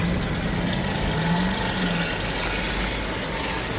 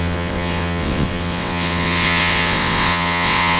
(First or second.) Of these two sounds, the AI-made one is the second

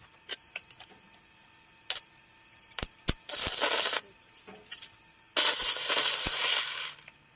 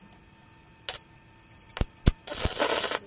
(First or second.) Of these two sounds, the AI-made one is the first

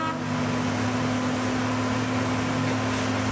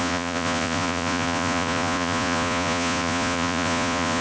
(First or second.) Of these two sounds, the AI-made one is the second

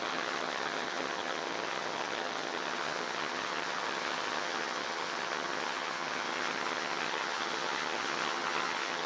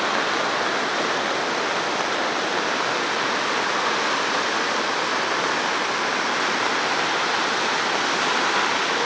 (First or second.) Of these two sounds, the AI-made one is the first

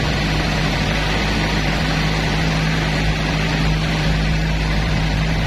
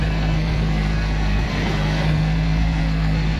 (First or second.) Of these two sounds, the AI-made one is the second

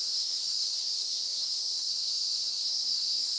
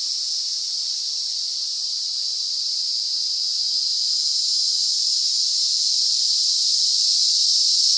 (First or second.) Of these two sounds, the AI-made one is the first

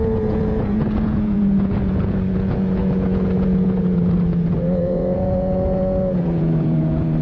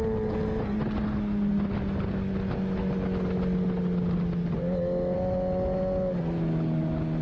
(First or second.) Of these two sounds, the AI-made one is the first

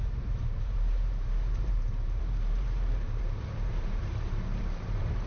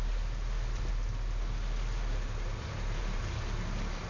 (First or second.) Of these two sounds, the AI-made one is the first